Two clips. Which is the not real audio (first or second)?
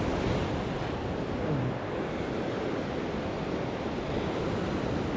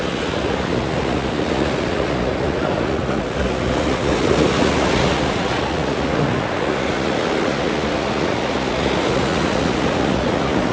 second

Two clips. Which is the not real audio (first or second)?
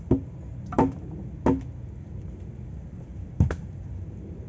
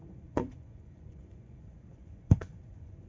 second